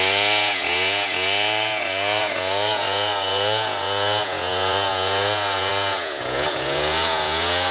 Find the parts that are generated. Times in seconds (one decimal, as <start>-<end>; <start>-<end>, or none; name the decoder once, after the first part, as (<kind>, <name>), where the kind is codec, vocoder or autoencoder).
0.0-7.7 (vocoder, Vocos)